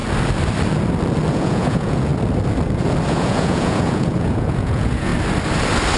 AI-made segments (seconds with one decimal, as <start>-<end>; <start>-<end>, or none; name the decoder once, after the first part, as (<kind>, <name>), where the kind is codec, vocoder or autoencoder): 1.3-2.1 (vocoder, Vocos); 3.1-5.1